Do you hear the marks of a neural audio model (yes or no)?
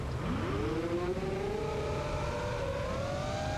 no